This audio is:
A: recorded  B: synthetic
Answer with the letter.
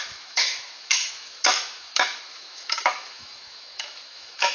B